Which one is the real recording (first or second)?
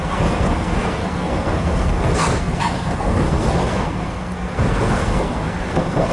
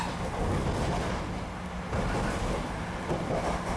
second